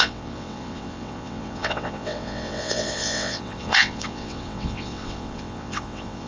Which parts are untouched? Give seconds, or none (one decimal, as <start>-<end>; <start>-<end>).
none